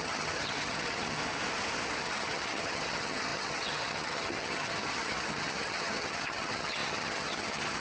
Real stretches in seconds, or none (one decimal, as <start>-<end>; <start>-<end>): 1.2-2.0